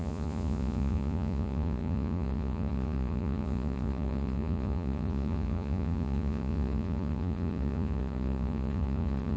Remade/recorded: remade